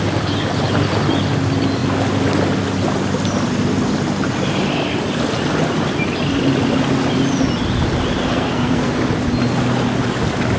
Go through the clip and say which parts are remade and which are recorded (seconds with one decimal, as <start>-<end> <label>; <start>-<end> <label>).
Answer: 0.0-8.2 recorded; 8.2-8.9 remade; 8.9-10.6 recorded